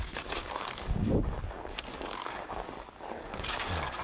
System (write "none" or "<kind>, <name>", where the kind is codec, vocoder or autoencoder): codec, DAC